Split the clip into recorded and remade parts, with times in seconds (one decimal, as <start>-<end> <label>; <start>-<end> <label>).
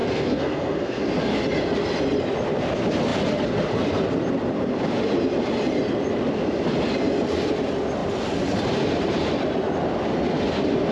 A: 0.0-1.0 remade; 1.0-10.9 recorded